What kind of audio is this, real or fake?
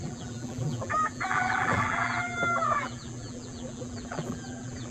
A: fake